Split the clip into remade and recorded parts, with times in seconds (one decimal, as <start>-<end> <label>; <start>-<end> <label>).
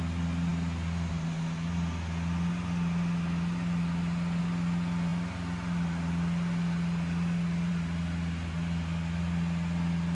0.0-10.1 recorded